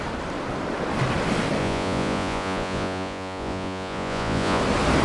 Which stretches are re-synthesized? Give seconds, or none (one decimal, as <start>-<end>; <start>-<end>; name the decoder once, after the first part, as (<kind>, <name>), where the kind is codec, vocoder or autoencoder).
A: 1.6-4.6 (vocoder, Vocos)

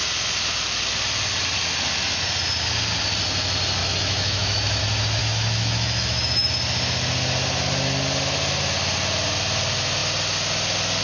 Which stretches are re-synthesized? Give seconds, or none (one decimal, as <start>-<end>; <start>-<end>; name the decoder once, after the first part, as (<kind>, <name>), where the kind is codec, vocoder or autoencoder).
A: 3.8-4.8 (autoencoder, DAC-VAE); 5.2-6.5

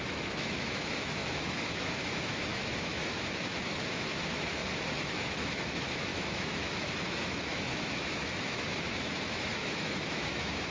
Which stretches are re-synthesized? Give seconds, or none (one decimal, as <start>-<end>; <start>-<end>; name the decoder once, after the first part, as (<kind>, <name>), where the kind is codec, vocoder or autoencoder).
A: 0.0-4.6 (autoencoder, DAC-VAE); 5.1-10.7